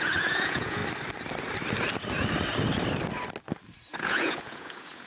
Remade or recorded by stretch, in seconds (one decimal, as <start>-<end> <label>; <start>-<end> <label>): 0.0-0.8 remade; 0.8-3.9 recorded; 3.9-5.1 remade